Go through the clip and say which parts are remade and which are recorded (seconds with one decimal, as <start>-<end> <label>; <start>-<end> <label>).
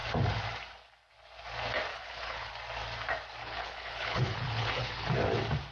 0.0-1.9 recorded; 1.9-2.5 remade; 2.5-3.4 recorded; 3.4-5.1 remade; 5.1-5.7 recorded